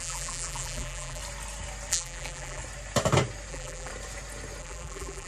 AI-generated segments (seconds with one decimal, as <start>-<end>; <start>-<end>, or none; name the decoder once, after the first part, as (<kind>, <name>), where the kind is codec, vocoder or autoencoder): 0.0-1.2 (vocoder, BigVGAN v2); 1.9-2.6; 3.5-3.9; 4.6-5.3